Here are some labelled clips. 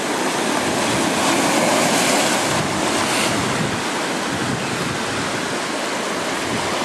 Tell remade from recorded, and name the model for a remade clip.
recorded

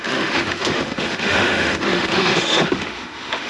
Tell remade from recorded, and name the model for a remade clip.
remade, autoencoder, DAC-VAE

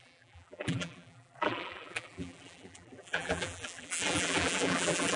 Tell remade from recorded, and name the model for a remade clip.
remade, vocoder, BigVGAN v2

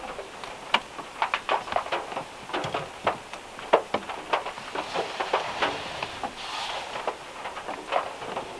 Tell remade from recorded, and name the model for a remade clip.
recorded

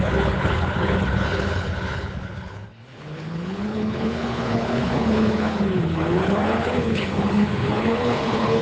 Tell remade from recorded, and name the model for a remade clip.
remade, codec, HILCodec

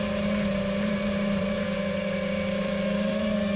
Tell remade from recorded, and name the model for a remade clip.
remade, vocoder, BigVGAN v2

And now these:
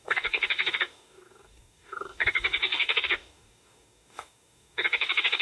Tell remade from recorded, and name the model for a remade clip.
remade, codec, DAC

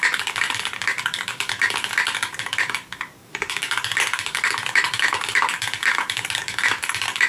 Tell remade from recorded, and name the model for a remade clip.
remade, codec, DAC